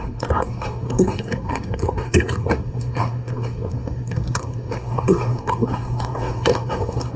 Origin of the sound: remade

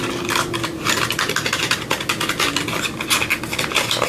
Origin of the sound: recorded